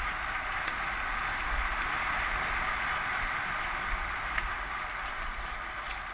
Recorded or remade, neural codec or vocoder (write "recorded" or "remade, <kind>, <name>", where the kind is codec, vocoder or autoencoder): recorded